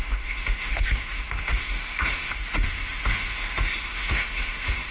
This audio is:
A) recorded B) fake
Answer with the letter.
B